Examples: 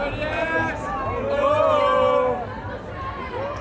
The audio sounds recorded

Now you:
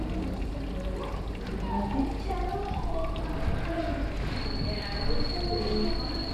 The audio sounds recorded